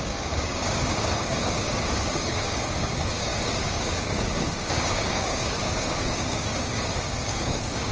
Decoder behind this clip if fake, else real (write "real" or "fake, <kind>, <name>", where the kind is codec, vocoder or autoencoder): fake, codec, DAC